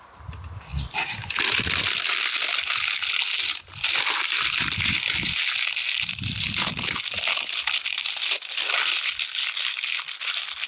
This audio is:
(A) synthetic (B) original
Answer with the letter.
B